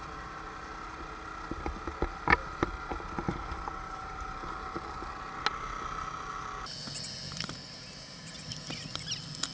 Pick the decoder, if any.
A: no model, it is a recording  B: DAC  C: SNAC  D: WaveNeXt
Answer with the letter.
A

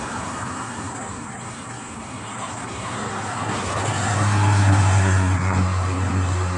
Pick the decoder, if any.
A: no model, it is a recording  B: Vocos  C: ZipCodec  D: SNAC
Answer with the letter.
D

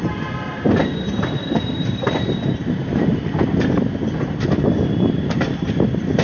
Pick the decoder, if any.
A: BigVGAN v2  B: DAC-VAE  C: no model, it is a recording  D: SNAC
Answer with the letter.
A